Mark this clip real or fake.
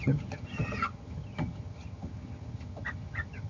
fake